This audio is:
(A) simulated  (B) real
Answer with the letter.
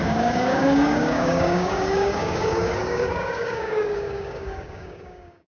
A